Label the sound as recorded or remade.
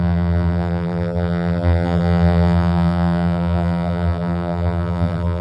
remade